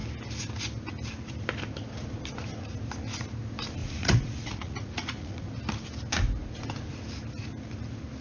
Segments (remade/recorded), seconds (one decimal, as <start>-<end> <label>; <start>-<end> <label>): 0.0-3.8 recorded; 3.8-5.5 remade; 5.5-8.2 recorded